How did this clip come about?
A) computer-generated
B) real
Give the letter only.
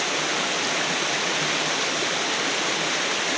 B